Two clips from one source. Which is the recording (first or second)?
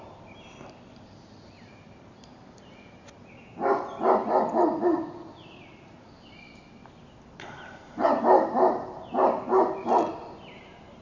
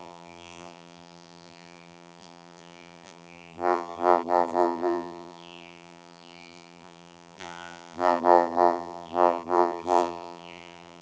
first